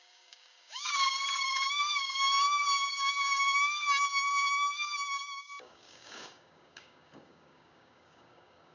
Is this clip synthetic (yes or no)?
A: yes